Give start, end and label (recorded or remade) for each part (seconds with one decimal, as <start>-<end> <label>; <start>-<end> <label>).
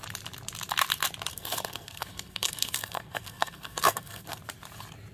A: 0.0-1.3 recorded; 1.3-4.4 remade; 4.4-5.1 recorded